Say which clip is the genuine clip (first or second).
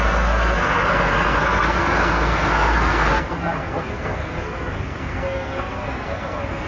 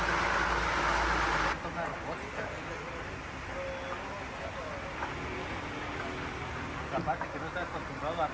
second